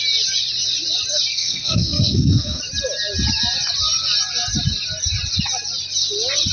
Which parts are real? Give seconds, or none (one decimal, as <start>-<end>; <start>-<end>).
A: 0.0-1.3; 2.6-6.5